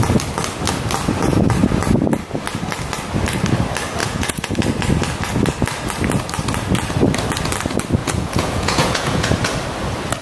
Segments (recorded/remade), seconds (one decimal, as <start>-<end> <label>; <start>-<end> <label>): 0.0-4.0 recorded; 4.0-4.5 remade; 4.5-8.0 recorded; 8.0-9.3 remade; 9.3-10.2 recorded